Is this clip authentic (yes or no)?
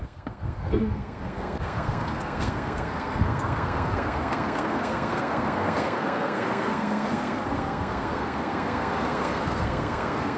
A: no